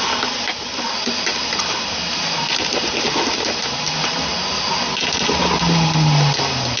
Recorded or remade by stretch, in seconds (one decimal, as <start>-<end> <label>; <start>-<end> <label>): 0.0-6.8 recorded